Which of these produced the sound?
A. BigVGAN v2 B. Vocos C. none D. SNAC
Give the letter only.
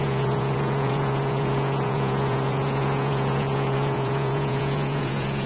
B